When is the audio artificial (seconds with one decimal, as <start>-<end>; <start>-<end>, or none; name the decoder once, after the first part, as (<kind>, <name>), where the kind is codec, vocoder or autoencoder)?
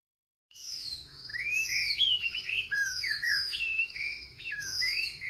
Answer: 0.0-5.3 (autoencoder, DAC-VAE)